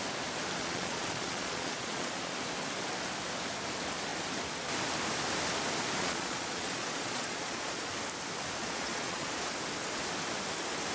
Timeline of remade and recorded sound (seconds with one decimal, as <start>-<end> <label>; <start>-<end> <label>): 0.0-0.6 recorded; 0.6-2.3 remade; 2.3-6.0 recorded; 6.0-7.9 remade; 7.9-8.6 recorded; 8.6-9.5 remade; 9.5-10.9 recorded